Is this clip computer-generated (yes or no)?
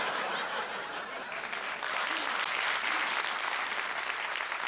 no